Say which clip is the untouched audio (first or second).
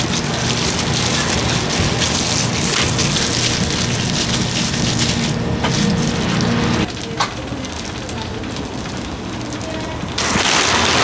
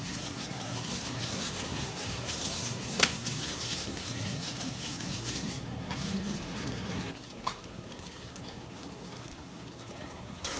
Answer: first